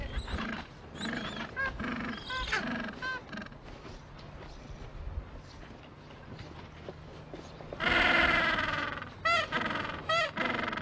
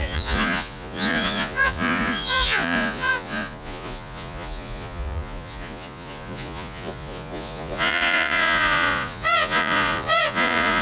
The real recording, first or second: first